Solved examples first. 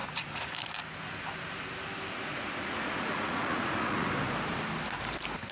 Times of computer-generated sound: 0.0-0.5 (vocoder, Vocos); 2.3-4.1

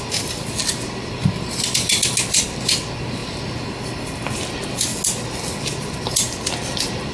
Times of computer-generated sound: none

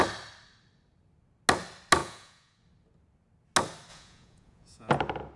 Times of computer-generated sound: 2.0-2.6 (vocoder, Vocos); 3.9-4.9

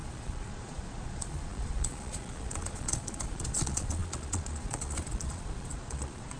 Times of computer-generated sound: 0.0-6.4 (vocoder, Vocos)

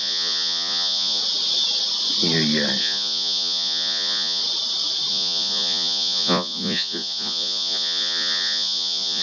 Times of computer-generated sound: 0.0-1.2 (vocoder, Vocos); 2.8-4.4; 5.1-9.2

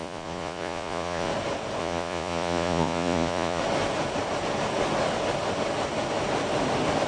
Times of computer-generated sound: 0.0-1.3 (vocoder, Vocos); 1.8-3.6